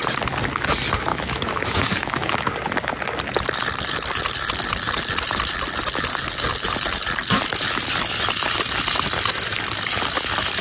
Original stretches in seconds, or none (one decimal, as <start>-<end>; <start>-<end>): 0.0-1.1; 2.5-10.6